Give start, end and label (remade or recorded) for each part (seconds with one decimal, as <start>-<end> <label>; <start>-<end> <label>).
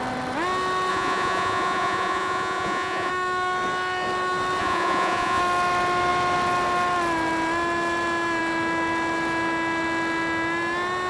0.0-0.9 recorded; 0.9-3.1 remade; 3.1-4.6 recorded; 4.6-5.4 remade; 5.4-11.1 recorded